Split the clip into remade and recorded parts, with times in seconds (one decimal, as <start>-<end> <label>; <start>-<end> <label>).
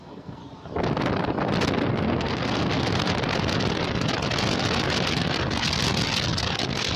0.0-0.4 remade; 0.4-1.9 recorded; 1.9-2.7 remade; 2.7-7.0 recorded